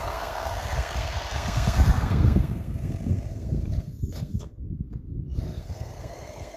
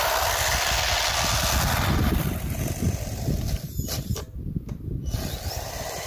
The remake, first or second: first